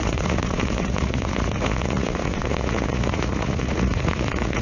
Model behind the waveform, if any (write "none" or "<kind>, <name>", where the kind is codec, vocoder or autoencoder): vocoder, Vocos